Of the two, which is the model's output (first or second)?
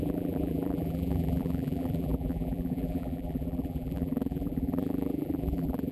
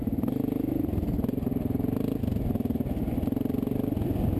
first